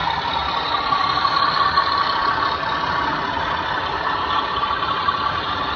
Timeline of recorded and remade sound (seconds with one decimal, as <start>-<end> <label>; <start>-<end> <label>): 0.0-2.2 remade; 2.2-4.6 recorded; 4.6-5.8 remade